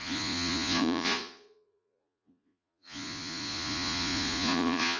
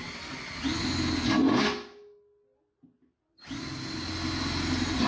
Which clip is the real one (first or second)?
second